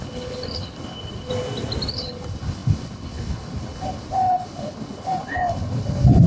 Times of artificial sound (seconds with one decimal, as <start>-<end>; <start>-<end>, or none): 0.0-1.3; 1.9-6.3